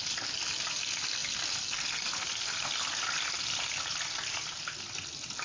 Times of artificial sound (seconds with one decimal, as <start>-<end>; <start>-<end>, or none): none